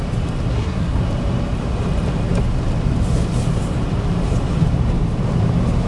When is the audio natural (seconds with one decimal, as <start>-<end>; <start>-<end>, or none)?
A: 0.0-0.5; 1.0-5.9